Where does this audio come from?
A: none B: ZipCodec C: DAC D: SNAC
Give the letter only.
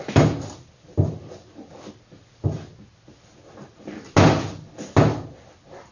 A